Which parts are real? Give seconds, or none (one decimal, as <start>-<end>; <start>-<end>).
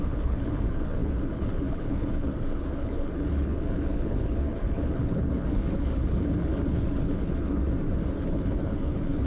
7.6-8.2